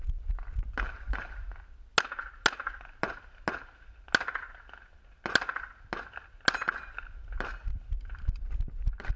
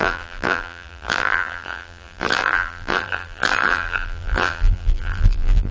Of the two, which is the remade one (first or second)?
second